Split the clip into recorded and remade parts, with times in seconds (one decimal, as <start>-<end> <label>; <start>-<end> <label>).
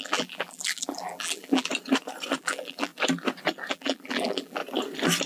0.0-1.7 remade; 1.7-2.4 recorded; 2.4-2.9 remade; 2.9-3.7 recorded; 3.7-4.6 remade; 4.6-5.3 recorded